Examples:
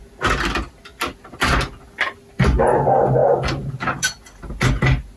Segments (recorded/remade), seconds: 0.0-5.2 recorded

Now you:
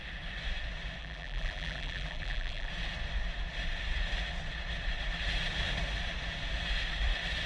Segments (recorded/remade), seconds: 0.0-1.0 recorded; 1.0-2.7 remade; 2.7-7.5 recorded